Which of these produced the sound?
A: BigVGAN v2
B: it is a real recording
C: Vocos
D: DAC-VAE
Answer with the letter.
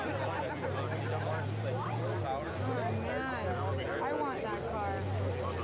B